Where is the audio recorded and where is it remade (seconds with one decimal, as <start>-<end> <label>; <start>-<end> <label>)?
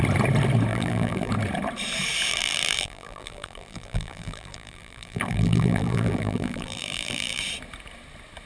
0.0-0.7 recorded; 0.7-1.3 remade; 1.3-2.3 recorded; 2.3-7.4 remade; 7.4-8.5 recorded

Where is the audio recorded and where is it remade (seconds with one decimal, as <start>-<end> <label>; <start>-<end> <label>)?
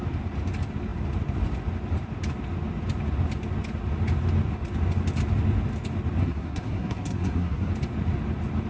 0.0-6.2 recorded; 6.2-7.7 remade; 7.7-8.7 recorded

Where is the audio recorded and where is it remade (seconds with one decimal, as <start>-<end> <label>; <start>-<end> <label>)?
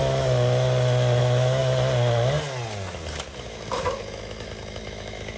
0.0-1.2 recorded; 1.2-1.6 remade; 1.6-3.4 recorded; 3.4-5.4 remade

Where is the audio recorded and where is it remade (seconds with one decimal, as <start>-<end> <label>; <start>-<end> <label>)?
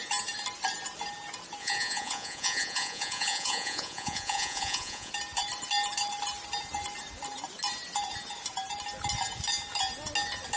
0.0-1.6 recorded; 1.6-5.1 remade; 5.1-10.6 recorded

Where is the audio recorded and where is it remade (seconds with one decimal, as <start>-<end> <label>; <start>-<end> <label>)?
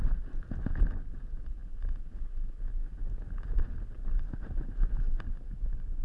0.0-6.0 recorded